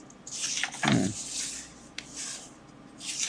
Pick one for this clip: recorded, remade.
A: recorded